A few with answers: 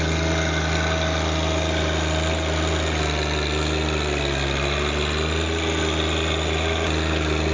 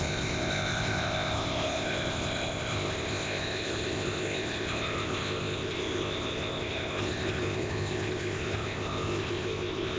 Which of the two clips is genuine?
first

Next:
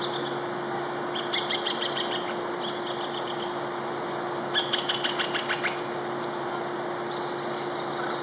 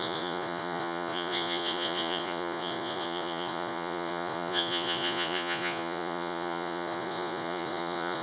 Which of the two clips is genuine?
first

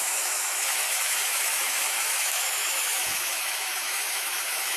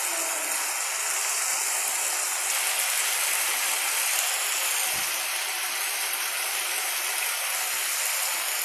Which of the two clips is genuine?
second